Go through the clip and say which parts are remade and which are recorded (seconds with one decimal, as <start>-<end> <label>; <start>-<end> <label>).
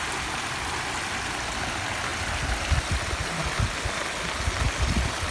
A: 0.0-5.3 recorded